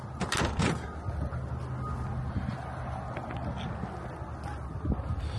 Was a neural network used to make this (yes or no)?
no